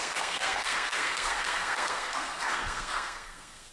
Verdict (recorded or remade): remade